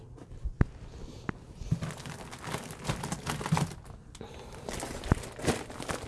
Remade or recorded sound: recorded